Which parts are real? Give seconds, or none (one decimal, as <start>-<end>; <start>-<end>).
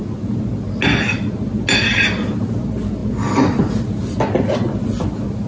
0.0-5.5